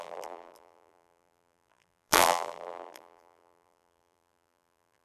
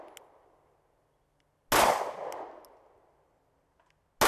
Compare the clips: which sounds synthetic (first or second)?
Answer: first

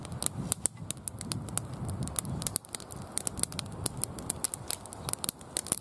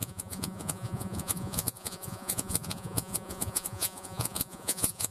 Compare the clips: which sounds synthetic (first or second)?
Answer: second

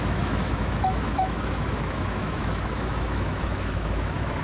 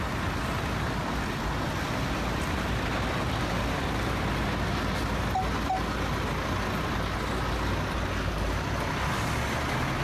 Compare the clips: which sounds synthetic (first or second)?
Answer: first